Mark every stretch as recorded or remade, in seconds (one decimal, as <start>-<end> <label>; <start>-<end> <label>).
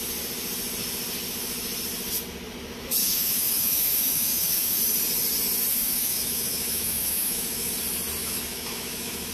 0.0-3.0 recorded; 3.0-4.8 remade; 4.8-5.7 recorded; 5.7-7.7 remade; 7.7-8.2 recorded; 8.2-9.3 remade